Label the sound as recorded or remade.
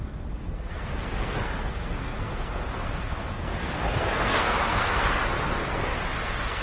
remade